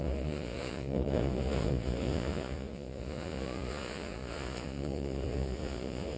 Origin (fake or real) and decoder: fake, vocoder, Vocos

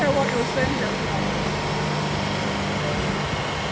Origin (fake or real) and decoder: real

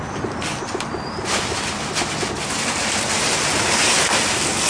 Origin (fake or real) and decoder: real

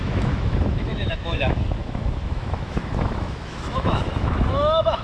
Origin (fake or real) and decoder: fake, autoencoder, DAC-VAE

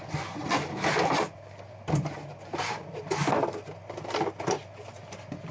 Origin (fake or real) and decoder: real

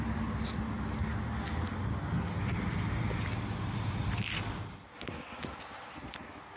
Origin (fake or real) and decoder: real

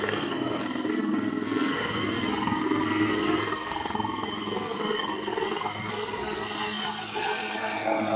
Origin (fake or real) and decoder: fake, codec, SNAC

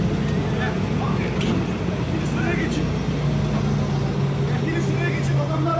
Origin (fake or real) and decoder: real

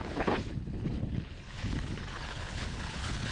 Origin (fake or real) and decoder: fake, codec, HILCodec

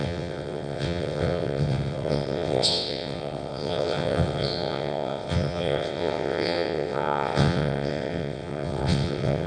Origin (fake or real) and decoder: fake, vocoder, WaveNeXt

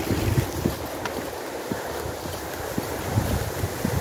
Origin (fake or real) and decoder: real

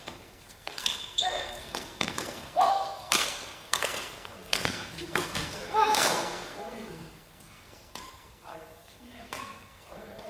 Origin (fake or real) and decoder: fake, codec, SNAC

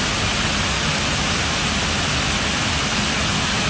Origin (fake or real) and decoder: real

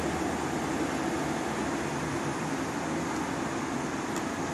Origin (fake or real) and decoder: real